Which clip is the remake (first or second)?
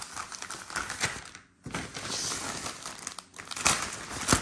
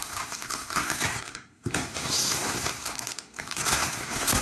second